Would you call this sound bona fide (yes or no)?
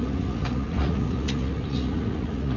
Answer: no